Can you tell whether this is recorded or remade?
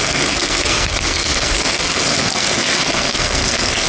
remade